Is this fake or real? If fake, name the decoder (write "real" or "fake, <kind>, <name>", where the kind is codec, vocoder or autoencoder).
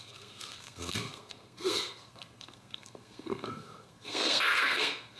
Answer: fake, codec, SNAC